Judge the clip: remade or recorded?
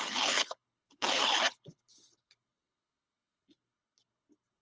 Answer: remade